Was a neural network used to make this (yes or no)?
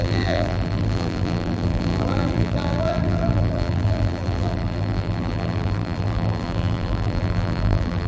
yes